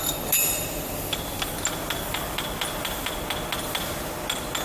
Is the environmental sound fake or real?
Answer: real